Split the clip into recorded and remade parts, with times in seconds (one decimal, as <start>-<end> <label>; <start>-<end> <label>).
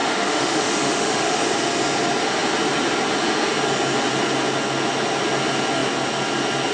0.0-1.4 remade; 1.4-6.7 recorded